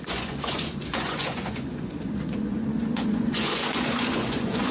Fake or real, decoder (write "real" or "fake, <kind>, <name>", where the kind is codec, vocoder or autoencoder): fake, vocoder, Vocos